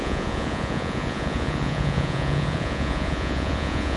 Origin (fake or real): fake